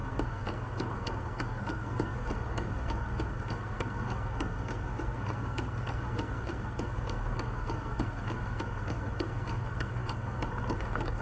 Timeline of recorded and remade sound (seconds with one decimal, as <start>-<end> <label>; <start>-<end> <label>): 0.0-11.2 remade